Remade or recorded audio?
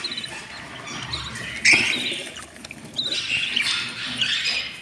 recorded